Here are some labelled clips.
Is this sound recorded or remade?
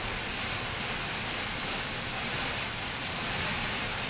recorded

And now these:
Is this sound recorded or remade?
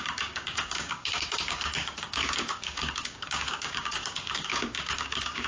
remade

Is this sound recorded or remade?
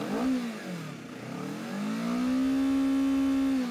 recorded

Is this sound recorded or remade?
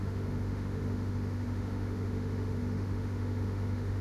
remade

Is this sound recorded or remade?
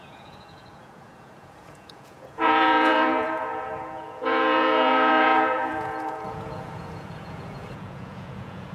remade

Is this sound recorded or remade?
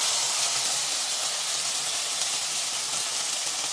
recorded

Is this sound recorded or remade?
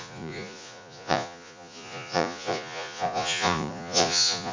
remade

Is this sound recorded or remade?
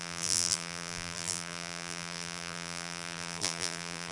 remade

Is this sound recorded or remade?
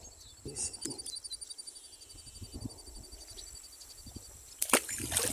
recorded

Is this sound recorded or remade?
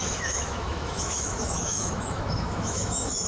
remade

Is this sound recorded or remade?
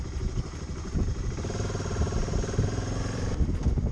recorded